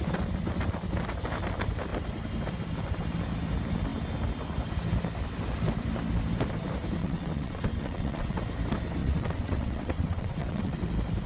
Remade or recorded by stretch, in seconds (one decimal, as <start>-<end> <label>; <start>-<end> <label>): 0.0-7.0 recorded; 7.0-8.4 remade; 8.4-9.0 recorded; 9.0-10.9 remade; 10.9-11.3 recorded